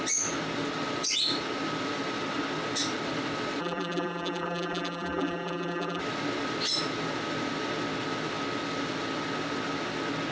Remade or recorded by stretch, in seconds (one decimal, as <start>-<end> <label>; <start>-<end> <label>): 0.0-3.6 recorded; 3.6-6.0 remade; 6.0-10.3 recorded